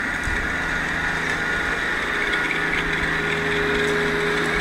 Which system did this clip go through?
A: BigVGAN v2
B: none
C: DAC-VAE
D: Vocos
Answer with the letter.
B